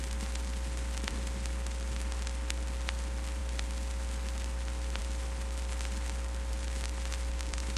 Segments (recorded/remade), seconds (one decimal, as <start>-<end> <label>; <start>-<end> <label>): 0.0-7.8 recorded